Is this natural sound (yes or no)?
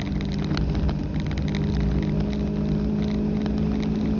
yes